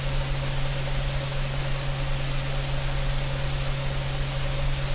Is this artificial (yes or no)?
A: no